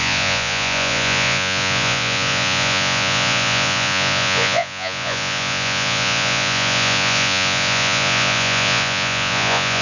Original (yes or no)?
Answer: no